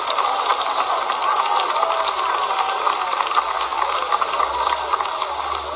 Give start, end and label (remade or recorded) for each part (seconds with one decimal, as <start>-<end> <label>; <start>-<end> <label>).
0.0-5.8 recorded